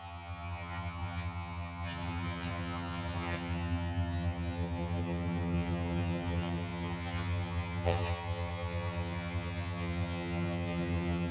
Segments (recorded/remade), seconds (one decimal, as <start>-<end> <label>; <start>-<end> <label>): 0.0-11.3 remade